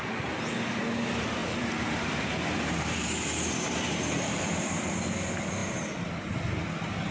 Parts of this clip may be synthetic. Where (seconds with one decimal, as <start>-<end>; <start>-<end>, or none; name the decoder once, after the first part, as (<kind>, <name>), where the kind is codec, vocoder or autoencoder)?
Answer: 1.4-5.1 (vocoder, BigVGAN v2)